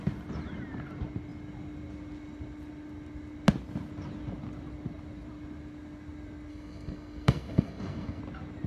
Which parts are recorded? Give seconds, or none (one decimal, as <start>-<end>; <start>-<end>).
0.0-6.5; 8.2-8.7